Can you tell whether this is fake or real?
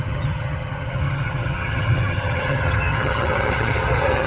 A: fake